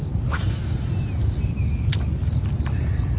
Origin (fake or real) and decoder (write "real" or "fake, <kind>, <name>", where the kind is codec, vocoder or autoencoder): real